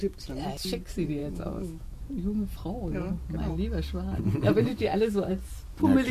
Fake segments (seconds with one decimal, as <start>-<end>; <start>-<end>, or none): 1.2-2.0; 4.7-5.3